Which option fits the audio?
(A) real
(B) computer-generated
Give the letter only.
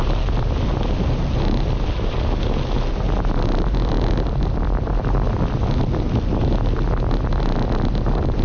A